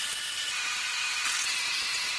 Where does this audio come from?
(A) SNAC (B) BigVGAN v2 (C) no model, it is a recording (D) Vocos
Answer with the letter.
C